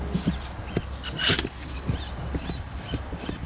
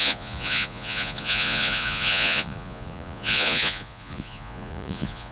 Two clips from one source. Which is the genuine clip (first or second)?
first